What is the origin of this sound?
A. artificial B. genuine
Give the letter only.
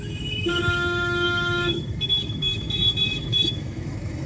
A